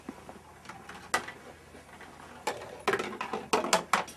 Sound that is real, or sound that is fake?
real